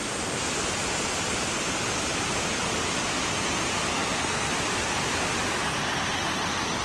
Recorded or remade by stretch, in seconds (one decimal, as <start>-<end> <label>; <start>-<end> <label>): 0.0-3.9 recorded; 3.9-4.5 remade; 4.5-6.8 recorded